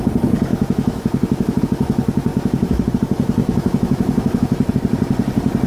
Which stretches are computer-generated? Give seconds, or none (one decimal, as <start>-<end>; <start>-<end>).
0.5-1.6; 2.3-2.9; 3.4-4.7